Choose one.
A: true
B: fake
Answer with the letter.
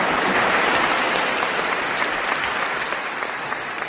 B